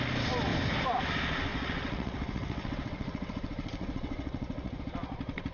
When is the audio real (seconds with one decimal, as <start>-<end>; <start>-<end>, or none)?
0.0-1.5; 4.8-5.5